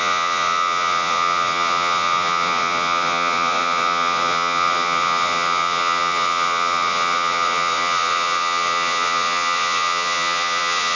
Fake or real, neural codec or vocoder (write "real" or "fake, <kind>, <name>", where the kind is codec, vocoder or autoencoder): fake, vocoder, Vocos